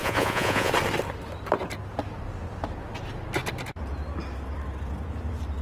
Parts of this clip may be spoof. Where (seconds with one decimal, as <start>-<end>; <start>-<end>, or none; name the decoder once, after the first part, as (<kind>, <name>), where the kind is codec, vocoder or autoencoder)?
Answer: 0.0-0.7 (vocoder, Vocos)